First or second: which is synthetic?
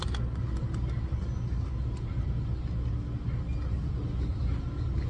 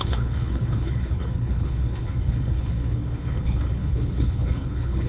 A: second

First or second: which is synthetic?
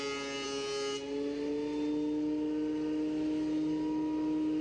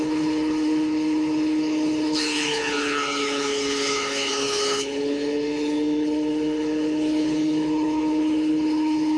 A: second